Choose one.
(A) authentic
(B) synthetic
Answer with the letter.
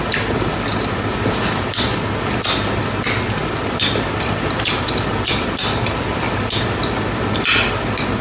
A